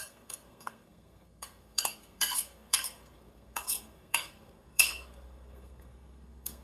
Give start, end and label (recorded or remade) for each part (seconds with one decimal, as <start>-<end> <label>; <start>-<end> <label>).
0.0-6.6 remade